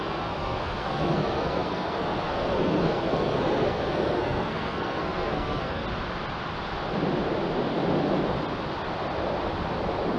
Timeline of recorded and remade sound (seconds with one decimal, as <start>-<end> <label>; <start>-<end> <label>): 0.0-5.8 remade; 5.8-10.2 recorded